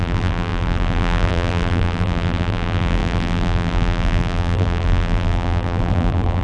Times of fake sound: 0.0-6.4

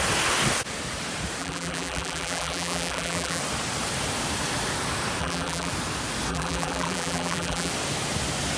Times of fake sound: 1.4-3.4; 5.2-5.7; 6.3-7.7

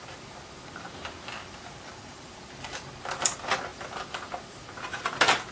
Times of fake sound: 1.4-2.4